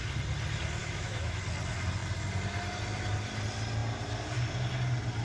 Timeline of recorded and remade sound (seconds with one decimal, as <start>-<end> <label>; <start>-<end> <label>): 0.0-0.8 recorded; 0.8-1.4 remade; 1.4-5.2 recorded